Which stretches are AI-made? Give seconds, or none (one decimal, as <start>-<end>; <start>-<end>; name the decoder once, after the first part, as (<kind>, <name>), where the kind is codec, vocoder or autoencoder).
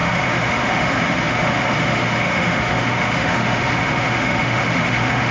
0.0-5.3 (autoencoder, DAC-VAE)